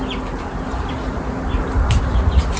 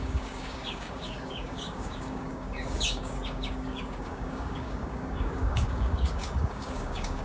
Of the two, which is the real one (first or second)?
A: first